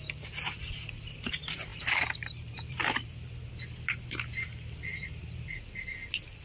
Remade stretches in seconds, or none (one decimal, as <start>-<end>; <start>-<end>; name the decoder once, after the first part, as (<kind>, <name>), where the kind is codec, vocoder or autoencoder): 1.7-3.5 (vocoder, BigVGAN v2); 4.9-5.5